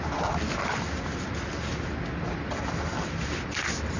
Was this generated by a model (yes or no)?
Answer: no